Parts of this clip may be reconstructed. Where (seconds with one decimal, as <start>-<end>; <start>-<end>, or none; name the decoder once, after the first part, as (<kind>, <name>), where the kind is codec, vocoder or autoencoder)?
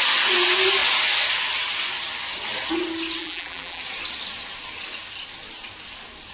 3.2-3.8 (vocoder, BigVGAN v2)